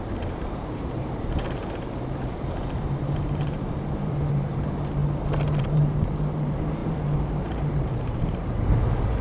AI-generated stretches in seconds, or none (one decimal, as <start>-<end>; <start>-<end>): 0.0-5.0; 5.6-9.2